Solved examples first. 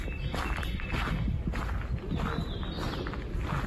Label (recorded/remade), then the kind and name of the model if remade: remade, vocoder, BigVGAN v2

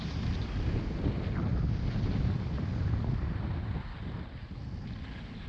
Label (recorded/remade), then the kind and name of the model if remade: recorded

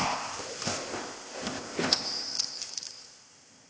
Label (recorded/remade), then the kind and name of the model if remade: remade, codec, ZipCodec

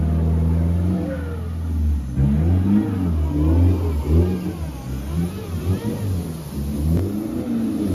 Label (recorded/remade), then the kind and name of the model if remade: recorded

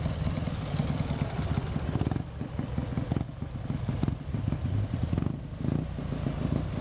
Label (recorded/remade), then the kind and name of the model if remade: recorded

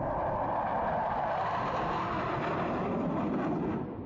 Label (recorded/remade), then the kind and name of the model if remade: recorded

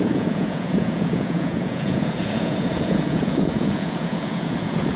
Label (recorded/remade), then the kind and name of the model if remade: remade, vocoder, Vocos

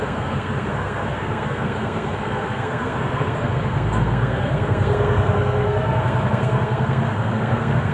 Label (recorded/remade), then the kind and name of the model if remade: remade, codec, SNAC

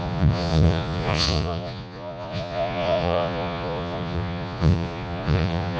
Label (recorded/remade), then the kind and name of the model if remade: remade, vocoder, Vocos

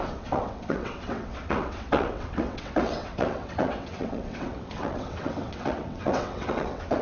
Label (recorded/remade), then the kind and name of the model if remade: remade, vocoder, WaveNeXt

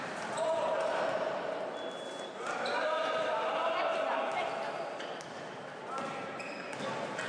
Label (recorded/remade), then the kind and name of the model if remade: recorded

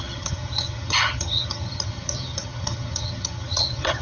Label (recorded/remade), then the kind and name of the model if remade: remade, vocoder, HiFi-GAN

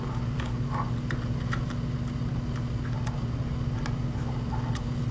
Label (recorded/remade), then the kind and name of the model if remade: recorded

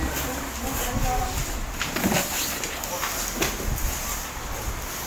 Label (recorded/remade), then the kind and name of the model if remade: recorded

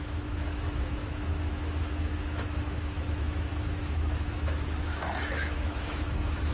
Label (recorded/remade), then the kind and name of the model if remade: remade, autoencoder, DAC-VAE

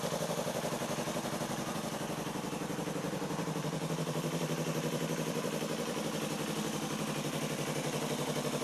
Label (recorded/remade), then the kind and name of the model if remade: remade, vocoder, BigVGAN v2